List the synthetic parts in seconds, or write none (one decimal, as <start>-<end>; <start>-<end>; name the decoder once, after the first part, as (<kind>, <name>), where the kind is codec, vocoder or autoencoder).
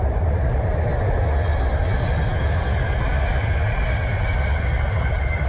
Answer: none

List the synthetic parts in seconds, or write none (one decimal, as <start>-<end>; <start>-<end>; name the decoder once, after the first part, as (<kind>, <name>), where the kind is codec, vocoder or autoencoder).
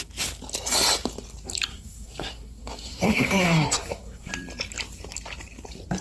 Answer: 1.7-4.3 (codec, SNAC)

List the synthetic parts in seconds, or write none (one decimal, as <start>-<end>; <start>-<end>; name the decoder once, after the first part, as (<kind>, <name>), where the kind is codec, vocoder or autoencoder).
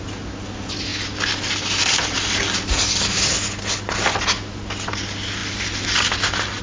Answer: none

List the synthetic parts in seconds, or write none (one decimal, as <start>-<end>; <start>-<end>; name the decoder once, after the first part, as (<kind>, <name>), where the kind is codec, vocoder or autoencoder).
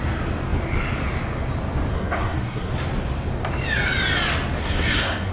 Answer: 1.9-2.7 (codec, SNAC); 4.6-5.3